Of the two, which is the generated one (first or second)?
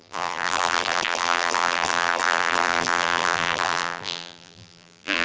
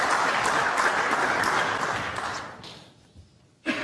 first